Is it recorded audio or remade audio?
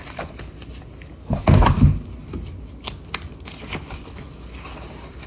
recorded